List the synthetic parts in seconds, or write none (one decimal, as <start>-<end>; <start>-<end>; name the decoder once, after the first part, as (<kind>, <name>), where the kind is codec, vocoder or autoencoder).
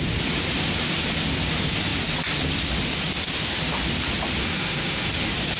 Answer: 4.4-5.1 (autoencoder, DAC-VAE)